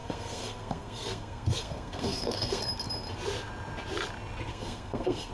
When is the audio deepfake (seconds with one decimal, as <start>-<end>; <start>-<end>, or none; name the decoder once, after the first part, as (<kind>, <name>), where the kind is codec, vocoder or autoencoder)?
0.0-2.6 (codec, SNAC); 4.5-5.3